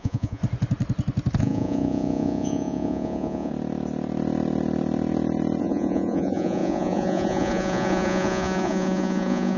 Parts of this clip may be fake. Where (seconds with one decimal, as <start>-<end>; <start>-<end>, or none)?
0.0-0.4; 1.4-3.5; 5.6-9.6